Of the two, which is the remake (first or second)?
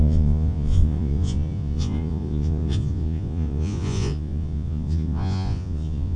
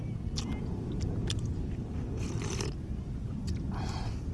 first